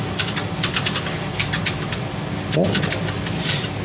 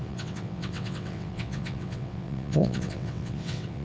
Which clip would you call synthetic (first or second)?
second